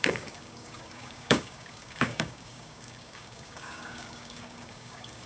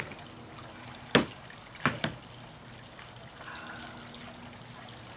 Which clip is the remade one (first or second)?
first